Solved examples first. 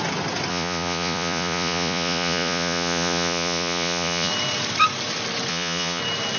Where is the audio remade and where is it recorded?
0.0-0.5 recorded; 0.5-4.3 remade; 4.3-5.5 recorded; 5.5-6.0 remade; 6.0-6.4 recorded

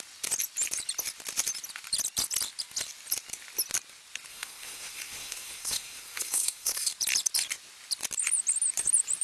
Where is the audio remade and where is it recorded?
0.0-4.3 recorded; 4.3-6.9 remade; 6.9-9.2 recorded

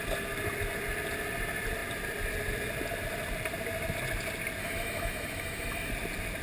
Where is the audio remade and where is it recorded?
0.0-4.6 recorded; 4.6-5.9 remade; 5.9-6.4 recorded

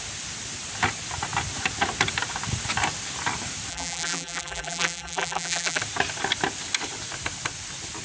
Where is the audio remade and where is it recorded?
0.0-3.7 recorded; 3.7-5.8 remade; 5.8-8.0 recorded